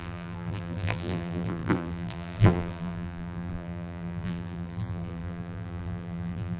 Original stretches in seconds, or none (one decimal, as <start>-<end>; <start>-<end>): none